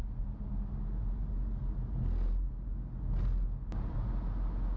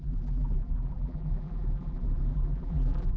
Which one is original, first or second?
first